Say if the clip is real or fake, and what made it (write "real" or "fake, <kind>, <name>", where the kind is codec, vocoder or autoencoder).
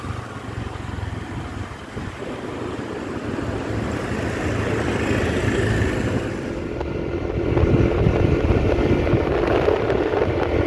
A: real